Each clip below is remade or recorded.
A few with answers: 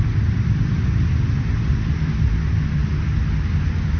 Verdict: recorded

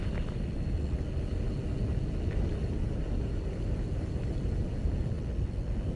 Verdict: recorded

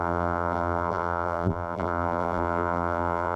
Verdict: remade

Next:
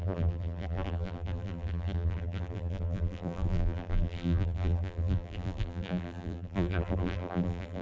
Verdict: remade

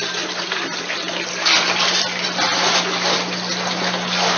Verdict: recorded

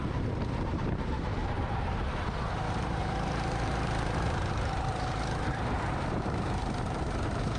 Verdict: remade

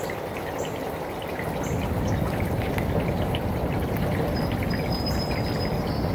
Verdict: remade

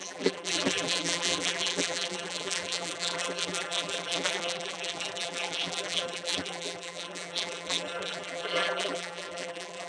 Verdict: remade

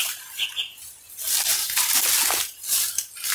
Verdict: recorded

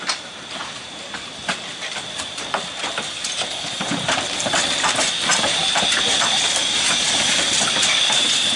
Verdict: remade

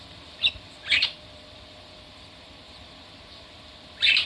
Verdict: remade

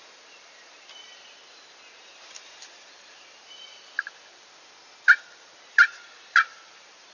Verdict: remade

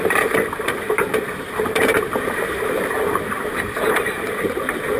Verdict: remade